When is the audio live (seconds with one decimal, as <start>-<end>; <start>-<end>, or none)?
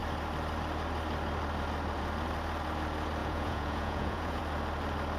0.0-3.2; 4.4-5.2